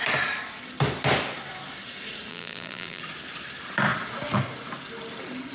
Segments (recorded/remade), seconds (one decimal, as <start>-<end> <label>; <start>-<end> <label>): 0.0-2.3 recorded; 2.3-3.0 remade; 3.0-5.5 recorded